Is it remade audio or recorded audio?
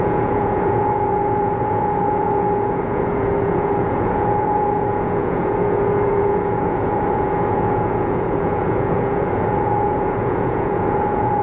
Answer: remade